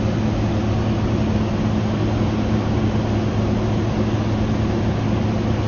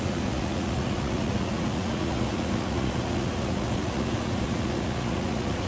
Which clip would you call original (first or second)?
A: first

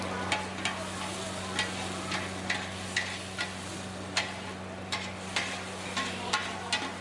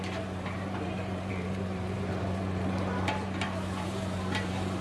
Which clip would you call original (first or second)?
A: first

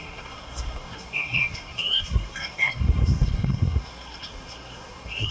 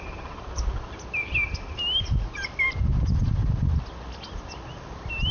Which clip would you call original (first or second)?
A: second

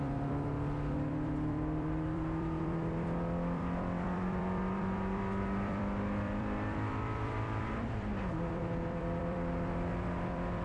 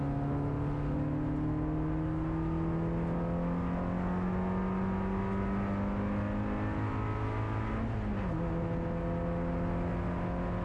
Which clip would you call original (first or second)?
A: second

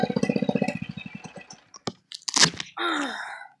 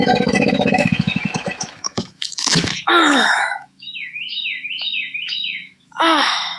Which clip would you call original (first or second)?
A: first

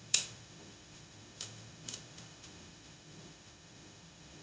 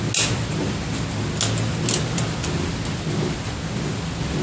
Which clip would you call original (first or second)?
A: second